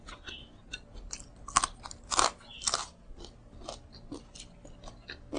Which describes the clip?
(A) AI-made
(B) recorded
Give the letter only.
B